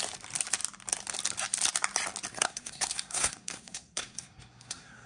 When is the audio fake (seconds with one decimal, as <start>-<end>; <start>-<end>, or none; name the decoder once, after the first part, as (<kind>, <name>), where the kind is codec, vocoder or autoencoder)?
2.3-5.1 (codec, SNAC)